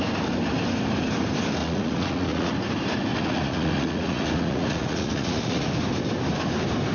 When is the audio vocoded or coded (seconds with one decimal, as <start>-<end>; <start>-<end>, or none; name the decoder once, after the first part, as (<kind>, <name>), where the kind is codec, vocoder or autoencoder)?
1.6-2.5 (vocoder, Vocos); 3.1-5.7